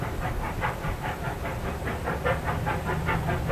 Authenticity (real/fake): real